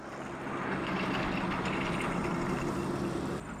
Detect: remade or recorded recorded